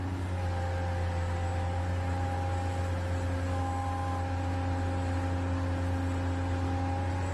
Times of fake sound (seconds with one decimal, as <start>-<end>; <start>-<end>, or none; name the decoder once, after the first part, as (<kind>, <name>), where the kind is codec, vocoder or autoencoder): none